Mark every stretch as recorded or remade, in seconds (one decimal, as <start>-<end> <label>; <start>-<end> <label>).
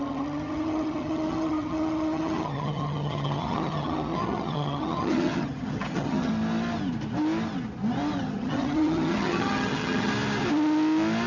0.0-6.3 remade; 6.3-8.2 recorded; 8.2-10.1 remade; 10.1-11.3 recorded